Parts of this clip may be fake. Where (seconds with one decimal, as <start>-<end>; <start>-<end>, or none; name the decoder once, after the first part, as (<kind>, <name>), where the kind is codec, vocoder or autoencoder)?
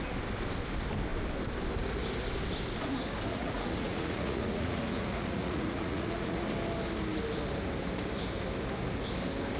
3.3-6.5 (vocoder, Vocos)